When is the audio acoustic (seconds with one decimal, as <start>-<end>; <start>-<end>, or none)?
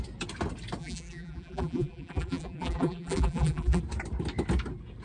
0.0-0.8; 3.8-5.0